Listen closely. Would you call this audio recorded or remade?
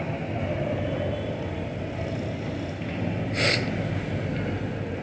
recorded